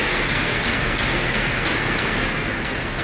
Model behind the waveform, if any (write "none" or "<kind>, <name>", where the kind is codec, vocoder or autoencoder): codec, SNAC